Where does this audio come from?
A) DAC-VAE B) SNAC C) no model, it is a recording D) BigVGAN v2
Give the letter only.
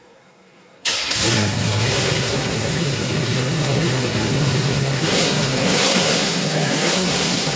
B